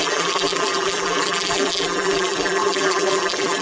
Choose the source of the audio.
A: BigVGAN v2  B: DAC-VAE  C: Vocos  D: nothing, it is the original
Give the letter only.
A